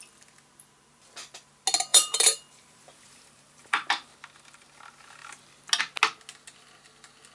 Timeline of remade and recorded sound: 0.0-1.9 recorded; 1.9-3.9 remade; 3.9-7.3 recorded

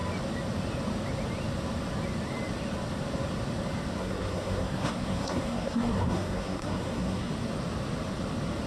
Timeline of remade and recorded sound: 0.0-4.0 recorded; 4.0-7.3 remade; 7.3-8.7 recorded